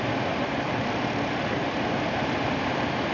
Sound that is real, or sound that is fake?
real